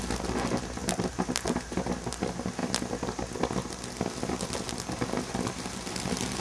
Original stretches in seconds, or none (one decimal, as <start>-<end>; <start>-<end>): 0.0-0.8; 1.9-6.4